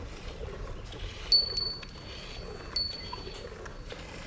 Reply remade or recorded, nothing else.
recorded